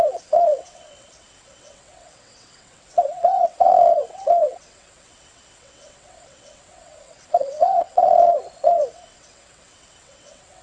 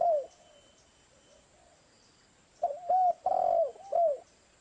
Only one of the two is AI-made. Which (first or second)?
first